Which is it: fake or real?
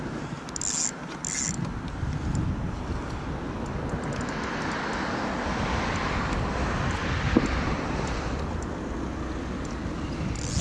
real